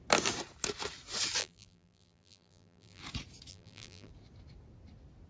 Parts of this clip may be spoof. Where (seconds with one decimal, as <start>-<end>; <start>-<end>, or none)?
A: 1.4-3.0; 3.5-4.1